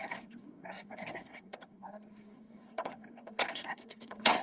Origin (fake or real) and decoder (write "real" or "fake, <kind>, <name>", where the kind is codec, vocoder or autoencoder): fake, codec, SNAC